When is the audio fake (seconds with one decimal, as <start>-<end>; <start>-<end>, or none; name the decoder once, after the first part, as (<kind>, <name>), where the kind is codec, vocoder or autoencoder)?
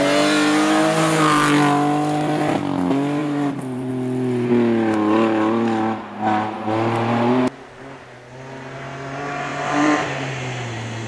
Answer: 3.2-3.9 (vocoder, BigVGAN v2); 9.5-10.3